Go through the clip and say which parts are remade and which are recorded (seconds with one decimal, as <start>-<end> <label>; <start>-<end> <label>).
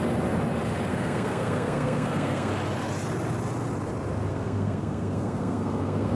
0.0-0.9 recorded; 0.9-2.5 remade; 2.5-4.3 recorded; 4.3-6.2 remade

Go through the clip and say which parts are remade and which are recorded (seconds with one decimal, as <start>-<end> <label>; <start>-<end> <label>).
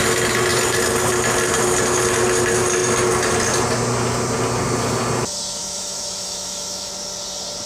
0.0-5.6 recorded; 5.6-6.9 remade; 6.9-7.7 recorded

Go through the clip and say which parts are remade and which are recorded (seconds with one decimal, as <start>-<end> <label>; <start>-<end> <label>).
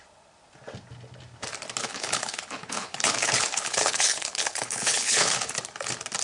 0.0-1.8 recorded; 1.8-5.5 remade; 5.5-6.2 recorded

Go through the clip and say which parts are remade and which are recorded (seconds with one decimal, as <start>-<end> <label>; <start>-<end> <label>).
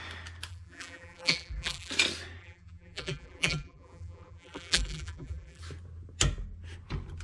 0.0-0.5 recorded; 0.5-1.9 remade; 1.9-2.4 recorded; 2.4-5.6 remade; 5.6-7.2 recorded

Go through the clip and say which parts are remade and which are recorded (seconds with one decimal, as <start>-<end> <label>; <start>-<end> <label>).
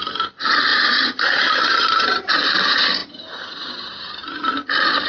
0.0-0.7 recorded; 0.7-2.3 remade; 2.3-5.1 recorded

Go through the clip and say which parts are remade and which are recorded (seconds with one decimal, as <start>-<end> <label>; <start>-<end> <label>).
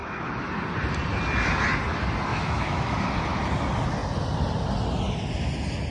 0.0-0.5 remade; 0.5-2.3 recorded; 2.3-3.0 remade; 3.0-5.9 recorded